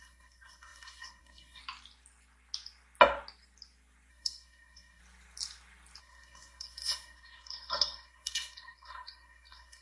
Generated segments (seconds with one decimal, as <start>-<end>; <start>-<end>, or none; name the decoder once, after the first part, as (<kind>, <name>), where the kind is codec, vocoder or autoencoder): 0.0-1.6 (codec, SNAC); 4.1-5.0; 6.0-9.8